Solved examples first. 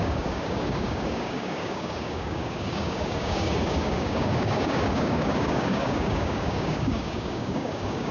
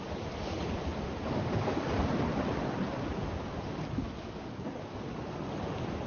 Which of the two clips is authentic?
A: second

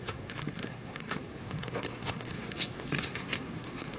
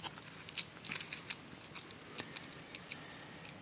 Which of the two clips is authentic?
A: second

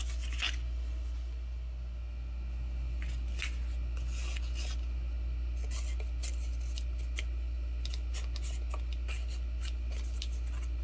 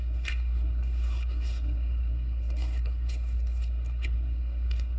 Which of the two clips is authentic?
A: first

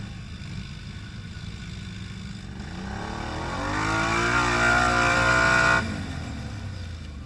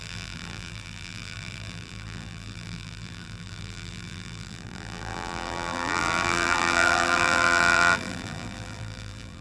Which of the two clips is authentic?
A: first